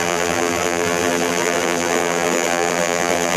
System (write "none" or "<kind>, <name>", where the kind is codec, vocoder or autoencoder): vocoder, BigVGAN v2